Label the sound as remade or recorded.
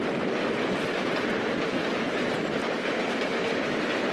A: remade